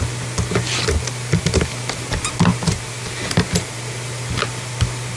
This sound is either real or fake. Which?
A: real